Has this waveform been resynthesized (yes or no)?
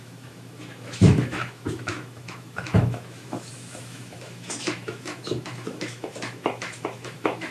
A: yes